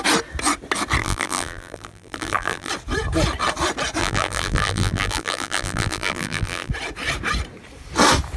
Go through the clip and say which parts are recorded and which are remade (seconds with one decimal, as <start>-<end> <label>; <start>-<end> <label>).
0.0-1.0 recorded; 1.0-2.7 remade; 2.7-4.0 recorded; 4.0-6.7 remade; 6.7-8.4 recorded